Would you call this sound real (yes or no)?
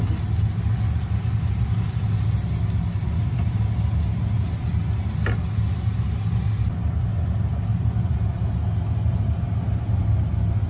yes